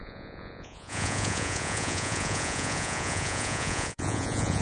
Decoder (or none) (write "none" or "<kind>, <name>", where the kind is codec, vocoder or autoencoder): vocoder, Vocos